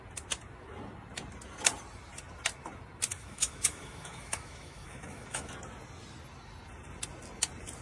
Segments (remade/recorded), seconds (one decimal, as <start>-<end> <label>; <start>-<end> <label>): 0.0-3.1 recorded; 3.1-5.5 remade; 5.5-7.8 recorded